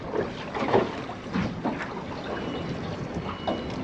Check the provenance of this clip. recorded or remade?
recorded